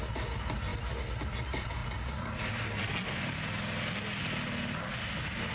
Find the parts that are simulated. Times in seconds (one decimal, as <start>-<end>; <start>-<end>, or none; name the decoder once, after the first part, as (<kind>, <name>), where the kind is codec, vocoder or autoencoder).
none